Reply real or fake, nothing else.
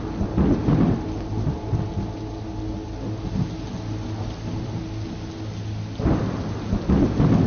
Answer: real